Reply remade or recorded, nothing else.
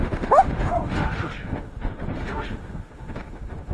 remade